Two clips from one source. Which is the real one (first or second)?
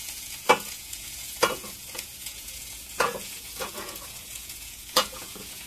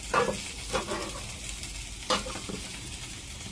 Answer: second